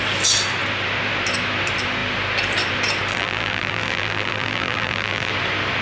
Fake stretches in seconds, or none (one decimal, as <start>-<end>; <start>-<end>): 3.1-5.3